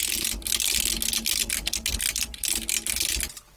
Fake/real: real